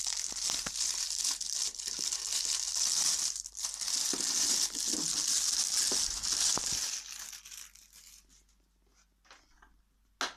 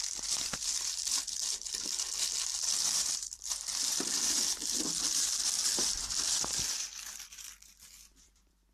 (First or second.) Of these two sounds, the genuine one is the first